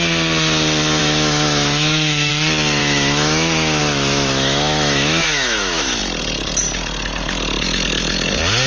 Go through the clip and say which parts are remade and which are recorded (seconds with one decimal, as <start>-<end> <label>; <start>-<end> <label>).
0.0-1.0 recorded; 1.0-2.3 remade; 2.3-2.8 recorded; 2.8-6.0 remade; 6.0-8.7 recorded